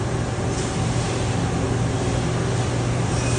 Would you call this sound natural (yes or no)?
yes